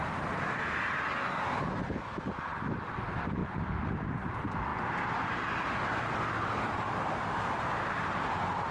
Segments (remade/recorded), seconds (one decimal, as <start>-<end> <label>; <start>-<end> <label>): 0.0-8.7 recorded